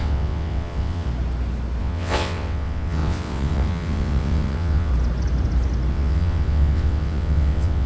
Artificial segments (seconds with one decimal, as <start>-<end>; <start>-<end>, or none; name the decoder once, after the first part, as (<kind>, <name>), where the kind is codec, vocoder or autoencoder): 0.0-1.1 (vocoder, WaveNeXt); 1.8-4.9; 5.9-7.9